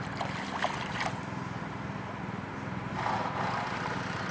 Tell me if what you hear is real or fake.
real